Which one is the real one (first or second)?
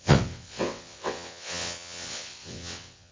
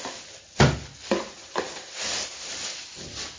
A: second